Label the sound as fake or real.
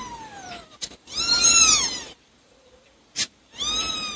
fake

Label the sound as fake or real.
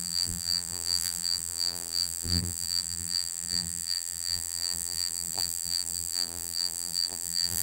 fake